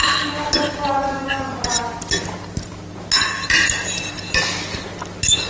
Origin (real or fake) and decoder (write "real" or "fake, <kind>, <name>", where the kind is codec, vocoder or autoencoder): real